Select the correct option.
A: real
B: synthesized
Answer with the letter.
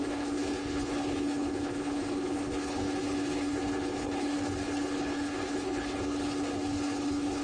B